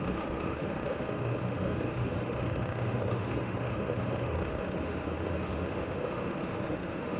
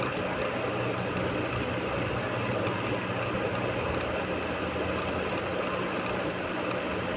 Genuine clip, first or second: second